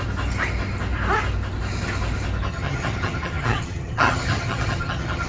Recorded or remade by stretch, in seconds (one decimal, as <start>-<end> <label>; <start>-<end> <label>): 0.0-2.5 recorded; 2.5-5.3 remade